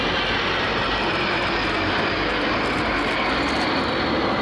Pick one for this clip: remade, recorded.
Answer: recorded